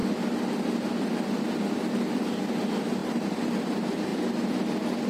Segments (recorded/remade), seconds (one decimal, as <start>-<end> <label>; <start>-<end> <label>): 0.0-3.0 recorded; 3.0-3.5 remade; 3.5-5.1 recorded